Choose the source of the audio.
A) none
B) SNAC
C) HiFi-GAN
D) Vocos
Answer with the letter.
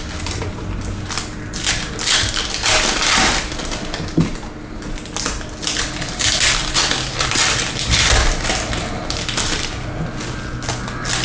A